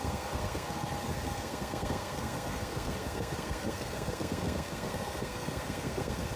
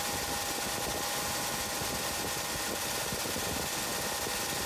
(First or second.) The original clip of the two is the second